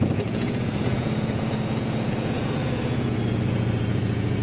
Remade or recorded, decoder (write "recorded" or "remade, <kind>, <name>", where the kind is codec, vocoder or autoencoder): remade, vocoder, Vocos